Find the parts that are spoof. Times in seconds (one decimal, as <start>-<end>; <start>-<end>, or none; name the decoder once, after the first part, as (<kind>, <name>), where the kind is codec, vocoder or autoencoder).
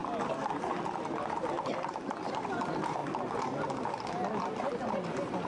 none